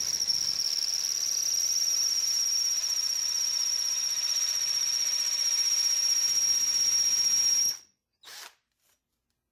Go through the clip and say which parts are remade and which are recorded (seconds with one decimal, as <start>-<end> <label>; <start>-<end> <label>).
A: 0.0-9.5 recorded